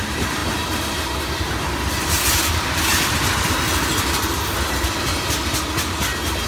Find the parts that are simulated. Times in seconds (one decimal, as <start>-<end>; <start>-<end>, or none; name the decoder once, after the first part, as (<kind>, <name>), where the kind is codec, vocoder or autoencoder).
none